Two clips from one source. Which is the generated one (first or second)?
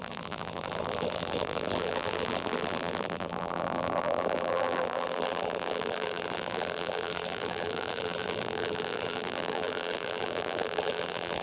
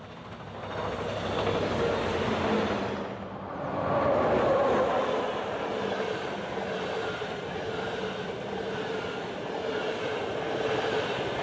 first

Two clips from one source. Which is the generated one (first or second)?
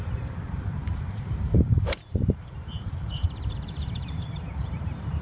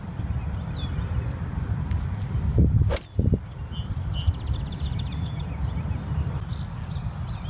first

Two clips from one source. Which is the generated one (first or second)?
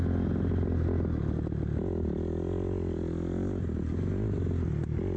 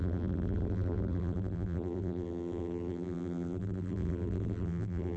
second